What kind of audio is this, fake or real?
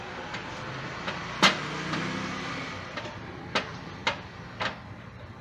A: real